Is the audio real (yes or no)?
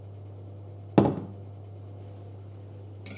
yes